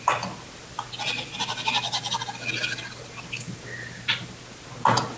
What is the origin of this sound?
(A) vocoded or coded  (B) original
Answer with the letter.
B